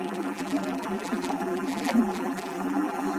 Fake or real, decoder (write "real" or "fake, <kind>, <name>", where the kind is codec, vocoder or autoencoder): fake, vocoder, BigVGAN v2